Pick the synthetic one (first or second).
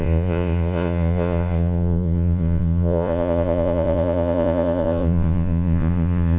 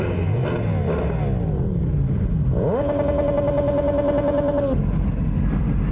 first